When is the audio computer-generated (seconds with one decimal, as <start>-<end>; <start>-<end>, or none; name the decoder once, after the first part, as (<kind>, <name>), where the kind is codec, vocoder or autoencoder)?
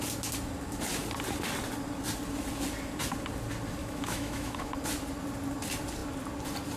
3.8-4.7 (autoencoder, DAC-VAE)